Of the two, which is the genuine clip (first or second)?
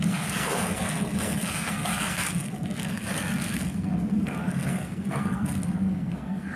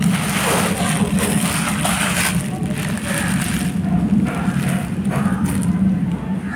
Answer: second